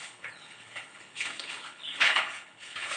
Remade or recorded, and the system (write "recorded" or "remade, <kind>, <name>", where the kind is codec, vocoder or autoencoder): remade, codec, HILCodec